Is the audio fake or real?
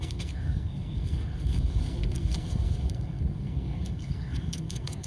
fake